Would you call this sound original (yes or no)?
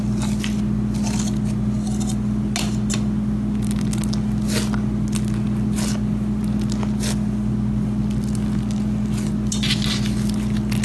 yes